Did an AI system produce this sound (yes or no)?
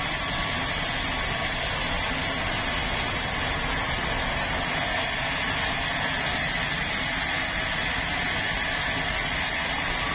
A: no